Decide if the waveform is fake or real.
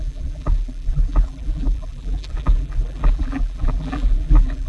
fake